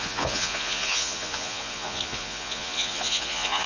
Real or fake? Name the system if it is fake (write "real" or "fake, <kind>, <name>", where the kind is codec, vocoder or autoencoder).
fake, vocoder, Vocos